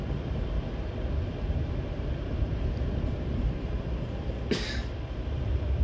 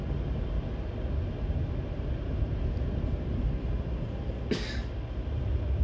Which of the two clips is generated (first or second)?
first